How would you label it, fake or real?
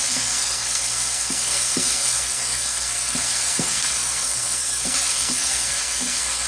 fake